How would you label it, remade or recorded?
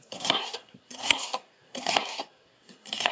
remade